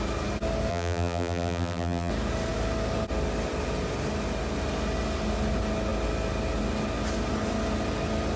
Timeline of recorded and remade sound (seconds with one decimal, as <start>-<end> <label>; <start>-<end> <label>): 0.0-0.7 recorded; 0.7-2.1 remade; 2.1-8.4 recorded